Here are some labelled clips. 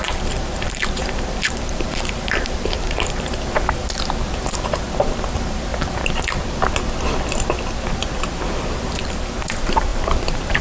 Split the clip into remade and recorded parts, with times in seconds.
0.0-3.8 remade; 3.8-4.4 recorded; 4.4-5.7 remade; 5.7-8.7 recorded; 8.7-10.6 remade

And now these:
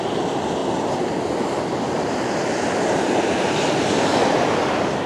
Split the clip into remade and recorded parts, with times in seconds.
0.0-5.1 recorded

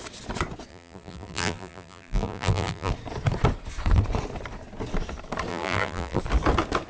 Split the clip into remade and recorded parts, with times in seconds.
0.0-0.7 recorded; 0.7-2.9 remade; 2.9-5.5 recorded; 5.5-6.2 remade; 6.2-6.9 recorded

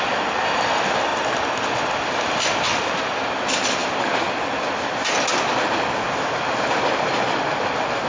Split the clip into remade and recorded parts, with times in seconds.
0.0-8.1 recorded

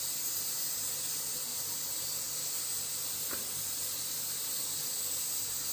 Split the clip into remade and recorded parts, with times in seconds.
0.0-5.7 recorded

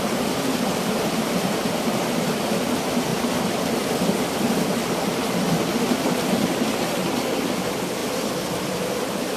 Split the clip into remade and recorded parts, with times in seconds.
0.0-9.4 recorded